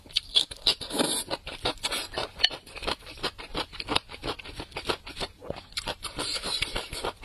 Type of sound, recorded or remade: remade